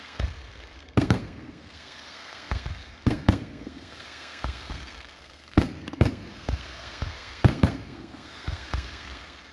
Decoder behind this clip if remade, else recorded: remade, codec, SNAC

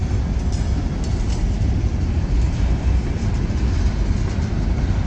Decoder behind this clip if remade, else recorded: recorded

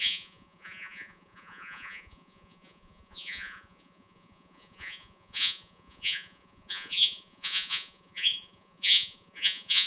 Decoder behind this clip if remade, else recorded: remade, vocoder, Vocos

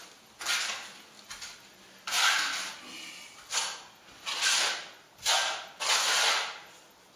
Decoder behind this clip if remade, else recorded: recorded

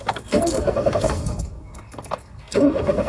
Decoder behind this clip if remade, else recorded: remade, codec, SNAC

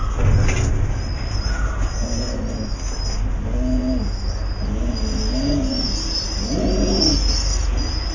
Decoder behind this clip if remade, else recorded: recorded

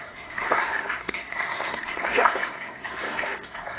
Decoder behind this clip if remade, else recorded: remade, codec, SNAC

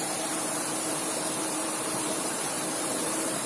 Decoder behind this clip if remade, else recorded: remade, vocoder, BigVGAN v2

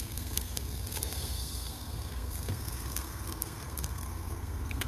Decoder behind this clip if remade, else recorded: remade, codec, SNAC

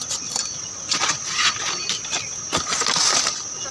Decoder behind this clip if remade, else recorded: recorded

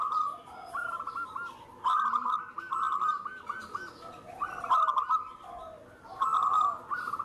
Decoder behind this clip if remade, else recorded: recorded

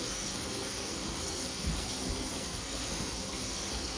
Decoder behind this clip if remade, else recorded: remade, codec, SNAC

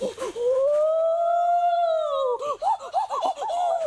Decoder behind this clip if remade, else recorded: recorded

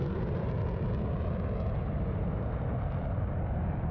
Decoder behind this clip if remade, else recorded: recorded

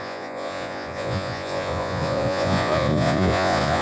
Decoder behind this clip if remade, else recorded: remade, vocoder, Vocos